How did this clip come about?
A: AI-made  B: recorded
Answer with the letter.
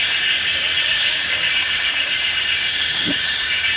A